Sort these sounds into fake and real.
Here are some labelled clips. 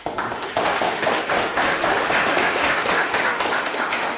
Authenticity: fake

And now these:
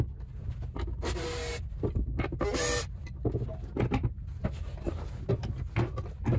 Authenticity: real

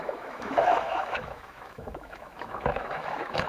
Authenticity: fake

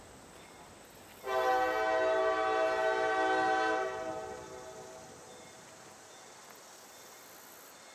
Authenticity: real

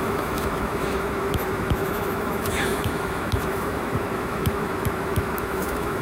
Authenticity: fake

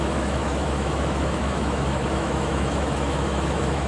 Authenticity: fake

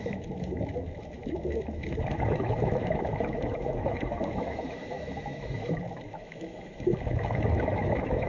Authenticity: fake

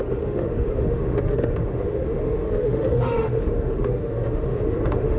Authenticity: fake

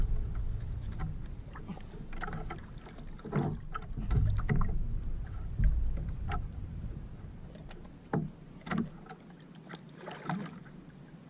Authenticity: real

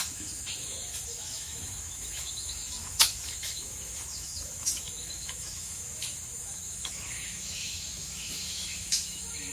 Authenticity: fake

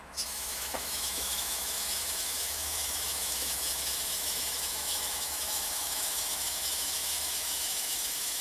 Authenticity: fake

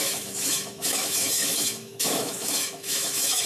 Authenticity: fake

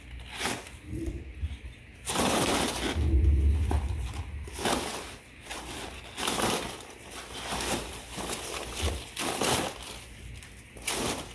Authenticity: real